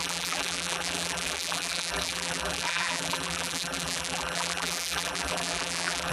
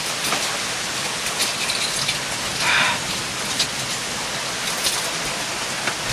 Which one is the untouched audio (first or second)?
second